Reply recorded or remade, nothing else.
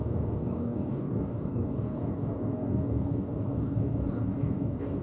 remade